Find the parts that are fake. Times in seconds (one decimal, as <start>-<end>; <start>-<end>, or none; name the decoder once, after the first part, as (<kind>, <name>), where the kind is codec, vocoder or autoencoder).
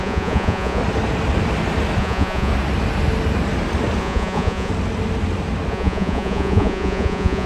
0.0-0.8 (vocoder, Vocos); 2.0-2.5; 4.0-4.7; 5.7-7.5